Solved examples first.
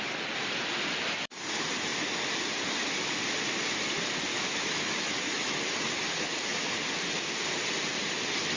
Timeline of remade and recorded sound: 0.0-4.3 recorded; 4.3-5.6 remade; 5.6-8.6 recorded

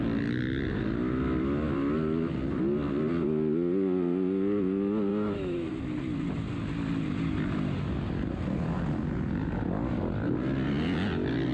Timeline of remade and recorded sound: 0.0-5.1 recorded; 5.1-5.7 remade; 5.7-11.5 recorded